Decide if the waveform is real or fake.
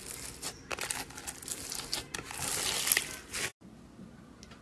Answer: real